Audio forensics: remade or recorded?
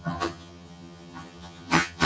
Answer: remade